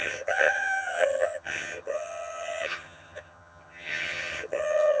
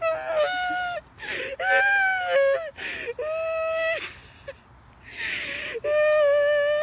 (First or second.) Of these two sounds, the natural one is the second